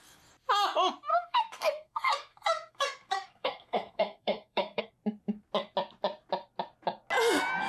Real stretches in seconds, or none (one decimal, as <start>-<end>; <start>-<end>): 0.0-1.1; 4.8-7.7